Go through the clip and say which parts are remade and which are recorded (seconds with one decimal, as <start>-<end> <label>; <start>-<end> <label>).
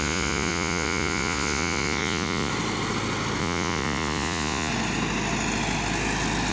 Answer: 0.0-2.5 remade; 2.5-3.4 recorded; 3.4-4.7 remade; 4.7-6.5 recorded